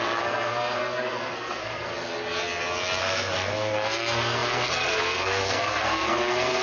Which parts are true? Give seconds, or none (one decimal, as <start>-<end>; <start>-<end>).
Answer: 1.9-3.0